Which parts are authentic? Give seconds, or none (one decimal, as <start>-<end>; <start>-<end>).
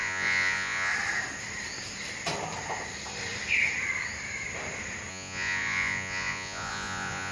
0.9-5.1